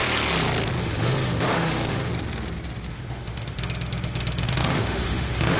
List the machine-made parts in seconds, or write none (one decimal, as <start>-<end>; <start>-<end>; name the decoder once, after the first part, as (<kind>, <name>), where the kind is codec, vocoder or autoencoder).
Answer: 0.8-2.1 (autoencoder, DAC-VAE); 2.9-5.6